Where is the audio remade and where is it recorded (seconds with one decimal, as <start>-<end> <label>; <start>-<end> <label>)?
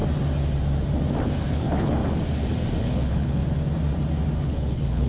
0.0-1.4 recorded; 1.4-2.0 remade; 2.0-2.8 recorded; 2.8-3.4 remade; 3.4-4.4 recorded; 4.4-5.1 remade